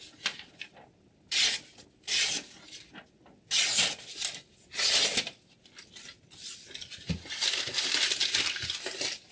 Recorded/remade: recorded